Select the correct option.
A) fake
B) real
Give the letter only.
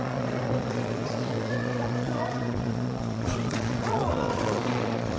A